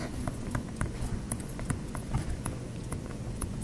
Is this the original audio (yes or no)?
no